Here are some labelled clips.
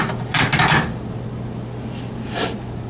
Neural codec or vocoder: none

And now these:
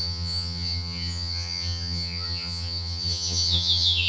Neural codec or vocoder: vocoder, HiFi-GAN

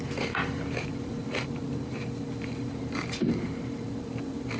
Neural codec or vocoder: vocoder, BigVGAN v2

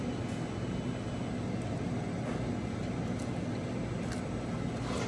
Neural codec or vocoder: none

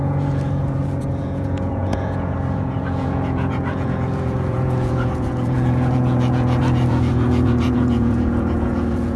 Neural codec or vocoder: vocoder, Vocos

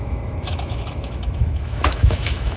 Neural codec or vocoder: autoencoder, DAC-VAE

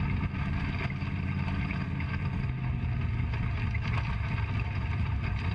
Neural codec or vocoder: none